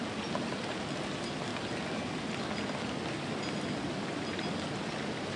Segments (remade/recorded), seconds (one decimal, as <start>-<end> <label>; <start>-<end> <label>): 0.0-5.4 recorded